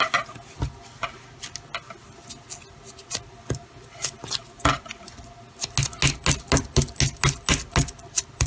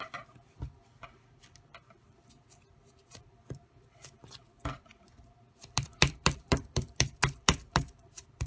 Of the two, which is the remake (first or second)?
second